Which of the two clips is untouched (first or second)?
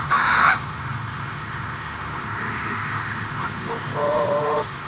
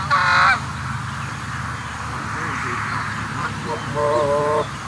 second